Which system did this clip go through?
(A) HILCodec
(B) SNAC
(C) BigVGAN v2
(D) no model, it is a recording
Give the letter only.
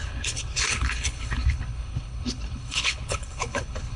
A